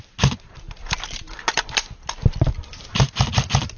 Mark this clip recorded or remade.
recorded